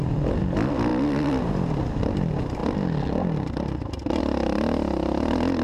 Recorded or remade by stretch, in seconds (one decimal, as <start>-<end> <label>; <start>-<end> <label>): 0.0-5.6 recorded

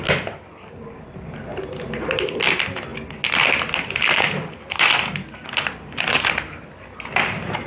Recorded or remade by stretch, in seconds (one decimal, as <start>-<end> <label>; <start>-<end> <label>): 0.0-7.7 recorded